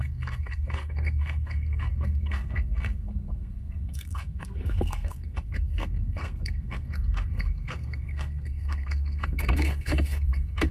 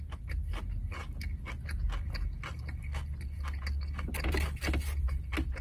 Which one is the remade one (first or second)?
first